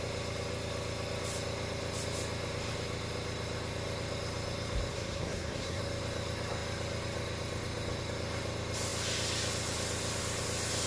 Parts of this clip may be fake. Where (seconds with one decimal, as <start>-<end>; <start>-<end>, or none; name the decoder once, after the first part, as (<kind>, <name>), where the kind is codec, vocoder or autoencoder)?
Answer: 4.9-5.8 (codec, SNAC)